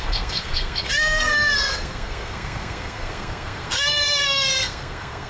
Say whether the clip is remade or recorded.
remade